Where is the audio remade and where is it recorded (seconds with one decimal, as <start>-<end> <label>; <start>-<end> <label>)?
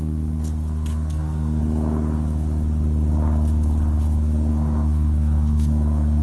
0.0-1.6 remade; 1.6-4.5 recorded; 4.5-6.2 remade